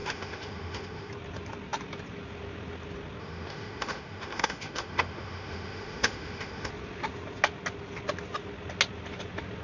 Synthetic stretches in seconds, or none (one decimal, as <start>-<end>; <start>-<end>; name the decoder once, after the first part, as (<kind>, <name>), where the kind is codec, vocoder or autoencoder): 0.0-1.1 (autoencoder, DAC-VAE); 3.2-6.7